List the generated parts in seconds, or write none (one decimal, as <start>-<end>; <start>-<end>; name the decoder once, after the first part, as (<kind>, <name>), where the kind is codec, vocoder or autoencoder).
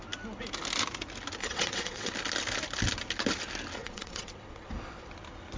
1.4-2.1 (vocoder, WaveNeXt); 3.8-5.1